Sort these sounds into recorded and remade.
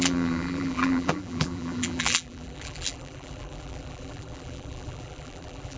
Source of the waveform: remade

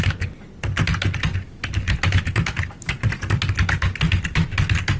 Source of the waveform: recorded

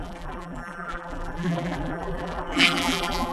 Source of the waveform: remade